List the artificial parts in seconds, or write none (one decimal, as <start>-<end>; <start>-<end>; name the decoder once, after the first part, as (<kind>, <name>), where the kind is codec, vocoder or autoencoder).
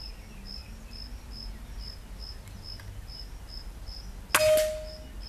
none